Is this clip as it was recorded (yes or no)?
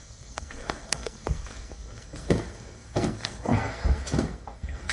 no